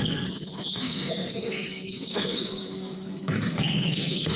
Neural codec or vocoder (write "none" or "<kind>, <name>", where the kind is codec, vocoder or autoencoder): codec, SNAC